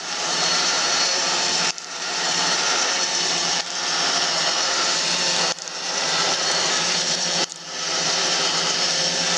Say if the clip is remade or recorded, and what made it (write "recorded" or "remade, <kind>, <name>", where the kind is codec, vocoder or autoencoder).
remade, vocoder, BigVGAN v2